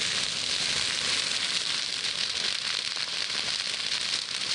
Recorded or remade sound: recorded